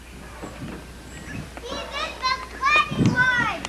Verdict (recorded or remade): recorded